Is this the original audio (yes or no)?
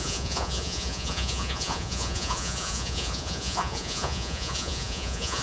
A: no